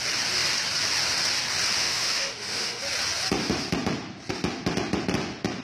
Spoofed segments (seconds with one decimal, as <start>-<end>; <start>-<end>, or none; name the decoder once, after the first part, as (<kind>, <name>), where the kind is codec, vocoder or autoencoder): 1.8-2.8 (autoencoder, DAC-VAE)